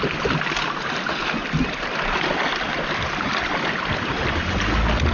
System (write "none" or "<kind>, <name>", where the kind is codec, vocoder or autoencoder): none